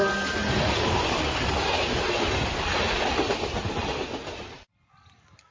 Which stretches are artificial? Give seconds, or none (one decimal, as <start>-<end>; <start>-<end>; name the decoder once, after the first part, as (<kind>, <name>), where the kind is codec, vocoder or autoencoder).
none